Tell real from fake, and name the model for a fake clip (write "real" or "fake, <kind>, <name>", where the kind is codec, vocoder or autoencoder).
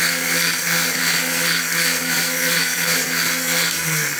fake, codec, SNAC